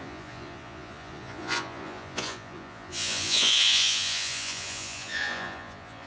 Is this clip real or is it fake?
fake